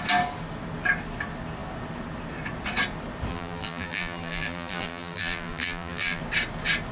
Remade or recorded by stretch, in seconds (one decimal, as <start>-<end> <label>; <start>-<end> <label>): 0.0-3.3 recorded; 3.3-6.2 remade; 6.2-6.9 recorded